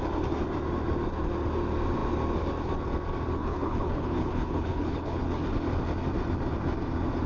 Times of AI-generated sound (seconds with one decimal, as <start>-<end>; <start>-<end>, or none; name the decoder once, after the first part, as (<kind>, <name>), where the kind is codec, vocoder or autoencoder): 3.4-5.2 (codec, HILCodec)